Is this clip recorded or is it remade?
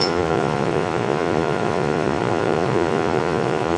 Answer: remade